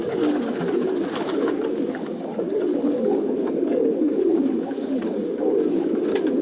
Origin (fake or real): fake